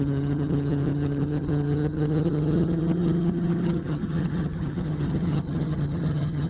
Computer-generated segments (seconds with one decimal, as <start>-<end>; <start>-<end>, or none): 0.0-6.5